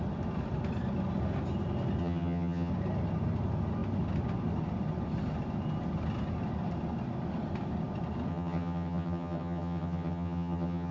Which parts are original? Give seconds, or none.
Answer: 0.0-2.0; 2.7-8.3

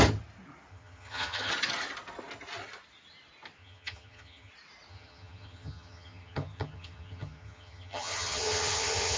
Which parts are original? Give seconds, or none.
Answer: 0.0-0.7; 1.5-3.6; 4.5-4.9

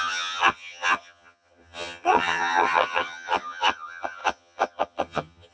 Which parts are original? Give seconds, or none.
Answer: none

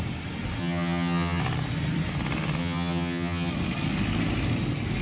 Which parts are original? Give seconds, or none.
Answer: 0.0-0.6; 1.4-2.6; 3.5-5.0

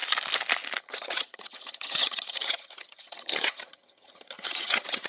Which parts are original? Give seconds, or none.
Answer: 0.0-0.8